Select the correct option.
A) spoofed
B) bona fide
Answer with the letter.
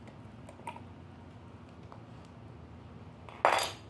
B